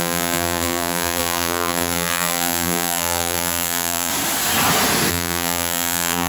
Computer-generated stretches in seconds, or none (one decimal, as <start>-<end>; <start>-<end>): 0.0-4.1; 5.1-6.3